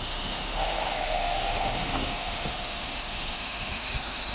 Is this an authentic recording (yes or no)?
no